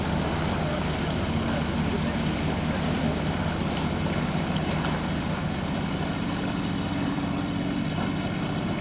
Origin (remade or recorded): recorded